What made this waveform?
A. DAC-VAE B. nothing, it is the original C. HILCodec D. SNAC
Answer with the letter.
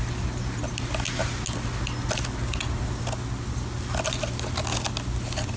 B